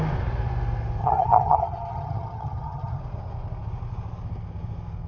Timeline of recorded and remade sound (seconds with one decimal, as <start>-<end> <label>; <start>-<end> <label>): 0.0-1.0 recorded; 1.0-3.0 remade; 3.0-5.1 recorded